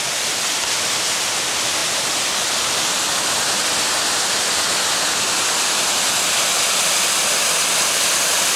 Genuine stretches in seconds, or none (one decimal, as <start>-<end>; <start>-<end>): 0.0-8.6